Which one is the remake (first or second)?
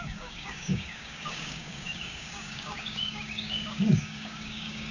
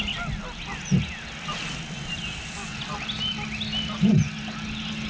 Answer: first